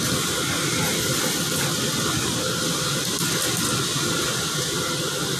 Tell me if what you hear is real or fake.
real